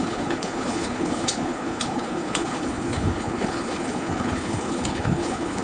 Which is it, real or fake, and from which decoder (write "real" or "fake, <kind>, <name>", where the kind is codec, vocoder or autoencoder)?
fake, codec, HILCodec